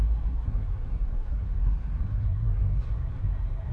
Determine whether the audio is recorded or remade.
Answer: remade